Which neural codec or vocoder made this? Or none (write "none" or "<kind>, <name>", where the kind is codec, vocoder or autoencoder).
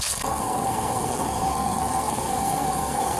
codec, SNAC